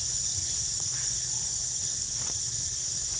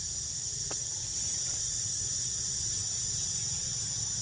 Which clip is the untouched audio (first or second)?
second